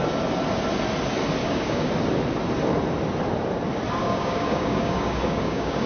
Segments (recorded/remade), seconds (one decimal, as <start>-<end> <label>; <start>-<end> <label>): 0.0-1.4 recorded; 1.4-1.9 remade; 1.9-4.0 recorded; 4.0-5.9 remade